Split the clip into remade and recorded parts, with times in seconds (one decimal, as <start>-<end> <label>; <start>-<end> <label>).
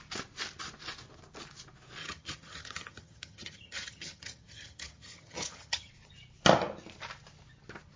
0.0-2.0 recorded; 2.0-5.9 remade; 5.9-8.0 recorded